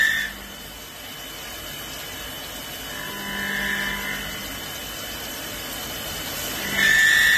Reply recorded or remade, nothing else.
recorded